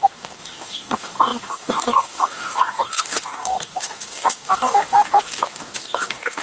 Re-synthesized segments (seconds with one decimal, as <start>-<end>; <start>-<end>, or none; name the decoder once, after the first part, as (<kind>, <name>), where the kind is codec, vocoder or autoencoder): 0.0-6.4 (codec, DAC)